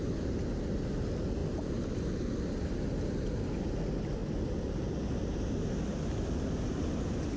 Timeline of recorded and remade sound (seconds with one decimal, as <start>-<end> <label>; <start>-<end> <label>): 0.0-7.4 recorded